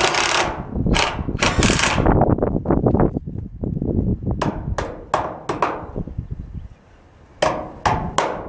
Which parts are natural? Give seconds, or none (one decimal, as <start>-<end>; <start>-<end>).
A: 0.0-8.5